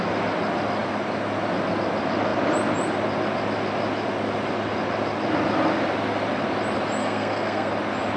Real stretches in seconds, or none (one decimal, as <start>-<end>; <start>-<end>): 0.0-7.0; 7.7-8.2